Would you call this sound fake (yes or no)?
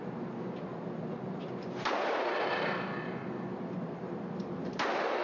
no